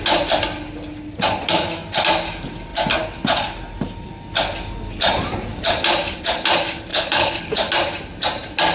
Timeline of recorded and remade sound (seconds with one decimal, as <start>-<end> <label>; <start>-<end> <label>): 0.0-6.9 recorded; 6.9-7.5 remade; 7.5-8.7 recorded